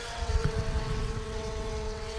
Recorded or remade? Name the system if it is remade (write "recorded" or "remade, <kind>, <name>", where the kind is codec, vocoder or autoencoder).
remade, vocoder, WaveNeXt